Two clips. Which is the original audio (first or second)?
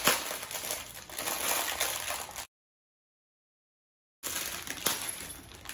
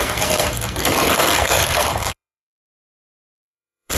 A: first